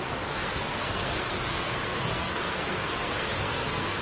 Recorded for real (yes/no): no